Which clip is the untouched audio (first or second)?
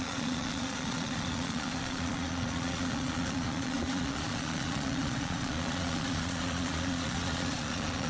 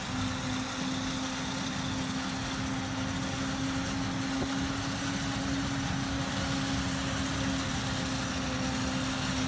second